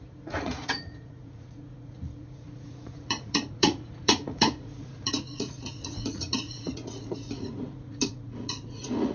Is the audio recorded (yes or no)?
no